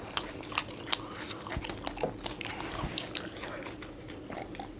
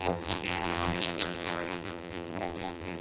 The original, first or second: first